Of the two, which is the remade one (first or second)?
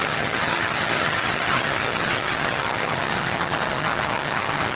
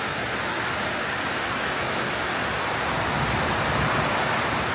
first